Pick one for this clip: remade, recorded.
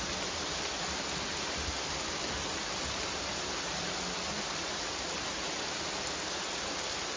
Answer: recorded